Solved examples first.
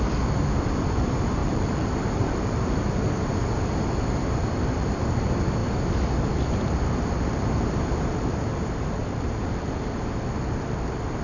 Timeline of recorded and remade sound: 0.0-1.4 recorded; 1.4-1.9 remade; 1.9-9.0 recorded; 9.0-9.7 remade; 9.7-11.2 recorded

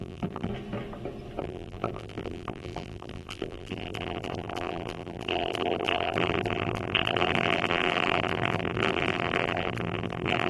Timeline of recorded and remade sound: 0.0-0.5 remade; 0.5-1.4 recorded; 1.4-10.5 remade

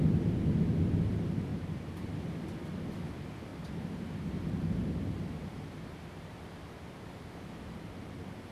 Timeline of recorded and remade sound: 0.0-1.5 recorded; 1.5-2.0 remade; 2.0-3.5 recorded; 3.5-8.5 remade